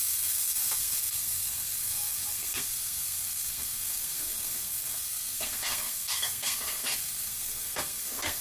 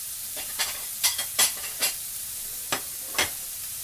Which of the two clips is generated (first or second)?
first